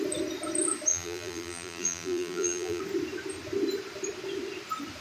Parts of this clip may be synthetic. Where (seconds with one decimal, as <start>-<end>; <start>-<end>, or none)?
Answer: 0.9-2.8